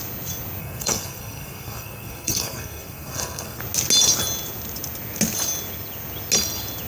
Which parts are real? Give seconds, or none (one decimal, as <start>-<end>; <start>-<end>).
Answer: 0.0-0.6; 3.6-6.9